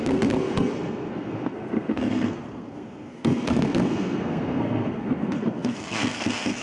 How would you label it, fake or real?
fake